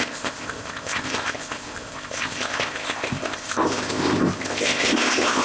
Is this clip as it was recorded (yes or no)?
no